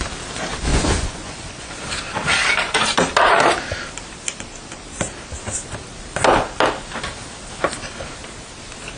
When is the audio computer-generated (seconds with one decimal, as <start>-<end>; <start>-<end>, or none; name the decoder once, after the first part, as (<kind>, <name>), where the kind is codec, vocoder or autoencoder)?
0.7-1.7 (vocoder, Vocos)